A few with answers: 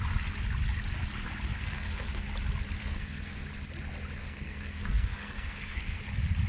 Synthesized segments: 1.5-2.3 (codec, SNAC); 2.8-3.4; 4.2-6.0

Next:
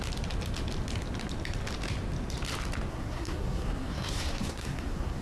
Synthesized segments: 2.9-5.2 (codec, SNAC)

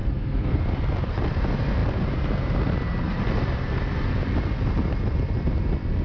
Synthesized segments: 0.0-0.6 (codec, SNAC)

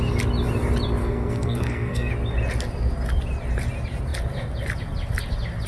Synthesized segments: 1.0-2.1 (codec, SNAC)

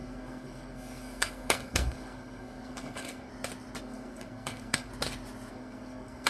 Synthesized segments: 0.0-3.3 (codec, SNAC); 3.8-4.9; 5.5-6.3

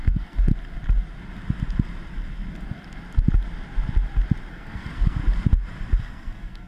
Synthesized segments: 0.0-0.5 (codec, SNAC); 4.5-5.2; 6.1-6.7

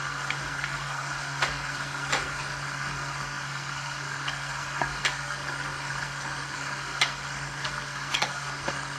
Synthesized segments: 0.0-9.0 (codec, SNAC)